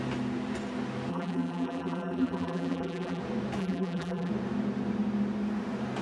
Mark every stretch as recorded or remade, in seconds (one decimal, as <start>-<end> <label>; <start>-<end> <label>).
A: 0.0-1.1 recorded; 1.1-3.2 remade; 3.2-3.6 recorded; 3.6-4.3 remade; 4.3-6.0 recorded